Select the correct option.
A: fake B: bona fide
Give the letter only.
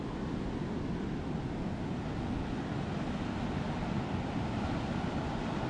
B